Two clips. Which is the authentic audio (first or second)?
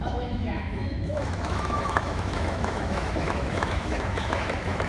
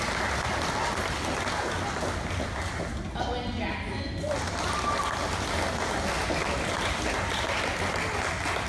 second